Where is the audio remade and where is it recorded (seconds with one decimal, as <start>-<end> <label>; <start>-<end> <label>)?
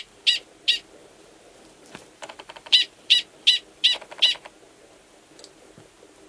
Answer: 0.0-1.0 recorded; 1.0-3.4 remade; 3.4-6.3 recorded